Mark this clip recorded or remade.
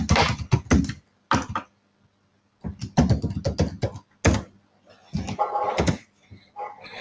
recorded